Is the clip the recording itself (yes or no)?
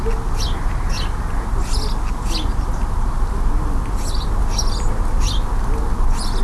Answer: yes